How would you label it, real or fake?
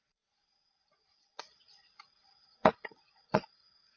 fake